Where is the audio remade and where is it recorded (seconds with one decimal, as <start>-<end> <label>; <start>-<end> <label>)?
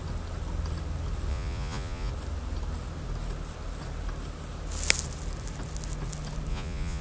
0.0-1.3 recorded; 1.3-2.1 remade; 2.1-6.5 recorded; 6.5-7.0 remade